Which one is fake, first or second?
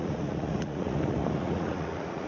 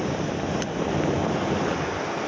first